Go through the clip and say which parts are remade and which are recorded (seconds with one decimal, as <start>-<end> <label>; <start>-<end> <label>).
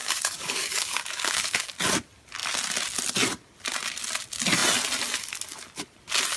0.0-1.7 remade; 1.7-6.4 recorded